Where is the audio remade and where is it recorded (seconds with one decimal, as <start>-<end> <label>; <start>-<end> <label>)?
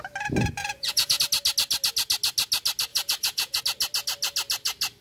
0.0-0.6 recorded; 0.6-1.2 remade; 1.2-2.9 recorded; 2.9-3.6 remade; 3.6-5.0 recorded